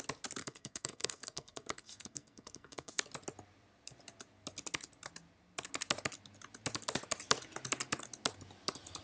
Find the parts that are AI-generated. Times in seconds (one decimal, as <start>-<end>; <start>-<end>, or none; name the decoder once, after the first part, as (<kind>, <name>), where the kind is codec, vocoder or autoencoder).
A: 0.4-3.0 (codec, SNAC)